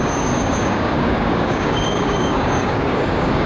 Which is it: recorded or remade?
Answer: remade